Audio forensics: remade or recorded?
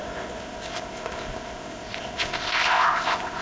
remade